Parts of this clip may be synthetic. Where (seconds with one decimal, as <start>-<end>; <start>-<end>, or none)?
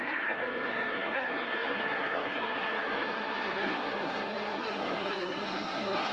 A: 0.0-6.1